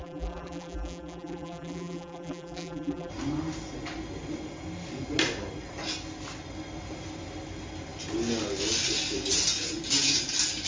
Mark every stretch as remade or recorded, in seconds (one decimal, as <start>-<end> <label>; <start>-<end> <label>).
0.0-3.1 remade; 3.1-10.7 recorded